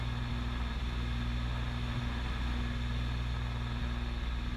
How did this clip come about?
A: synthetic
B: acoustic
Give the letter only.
B